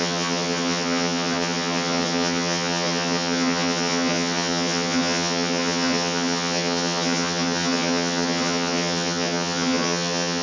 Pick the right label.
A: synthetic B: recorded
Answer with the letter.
A